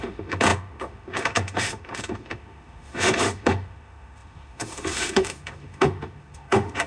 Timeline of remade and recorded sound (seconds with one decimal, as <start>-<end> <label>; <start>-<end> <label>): 0.0-6.9 remade